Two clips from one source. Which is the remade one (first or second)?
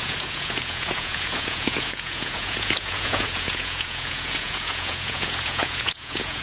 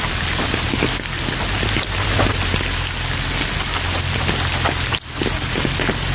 first